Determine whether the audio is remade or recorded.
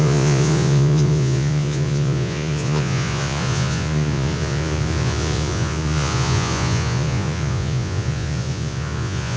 remade